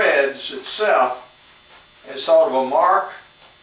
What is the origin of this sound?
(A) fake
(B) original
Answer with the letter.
B